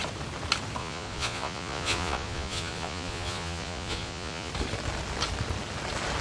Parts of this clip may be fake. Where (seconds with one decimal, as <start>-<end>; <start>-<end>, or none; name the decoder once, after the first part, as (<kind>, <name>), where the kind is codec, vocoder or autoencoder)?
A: 0.8-4.5 (vocoder, Vocos)